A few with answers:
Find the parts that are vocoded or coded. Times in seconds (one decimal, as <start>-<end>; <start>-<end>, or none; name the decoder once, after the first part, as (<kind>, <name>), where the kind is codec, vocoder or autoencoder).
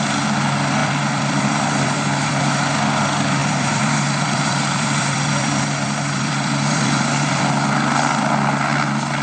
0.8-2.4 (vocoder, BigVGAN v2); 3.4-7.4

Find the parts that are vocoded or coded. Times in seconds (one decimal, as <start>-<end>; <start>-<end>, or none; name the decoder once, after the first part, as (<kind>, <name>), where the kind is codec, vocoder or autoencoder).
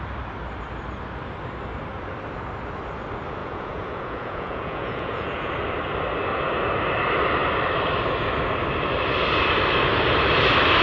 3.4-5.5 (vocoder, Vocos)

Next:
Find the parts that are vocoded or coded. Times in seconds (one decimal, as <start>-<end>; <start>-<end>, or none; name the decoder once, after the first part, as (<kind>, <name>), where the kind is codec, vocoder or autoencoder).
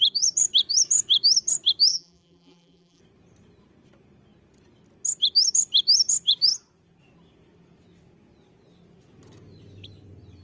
1.9-3.0 (vocoder, BigVGAN v2)